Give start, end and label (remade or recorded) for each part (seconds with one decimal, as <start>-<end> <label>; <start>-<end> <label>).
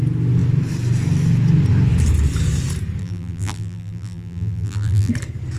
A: 0.0-3.0 recorded; 3.0-5.1 remade; 5.1-5.6 recorded